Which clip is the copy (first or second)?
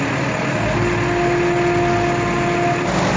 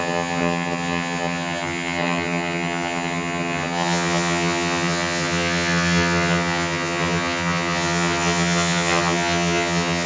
second